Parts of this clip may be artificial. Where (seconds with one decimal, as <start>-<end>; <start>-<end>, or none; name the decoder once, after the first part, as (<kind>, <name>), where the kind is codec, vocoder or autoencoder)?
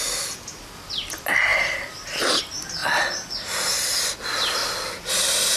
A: 1.5-2.4 (vocoder, BigVGAN v2); 4.6-5.1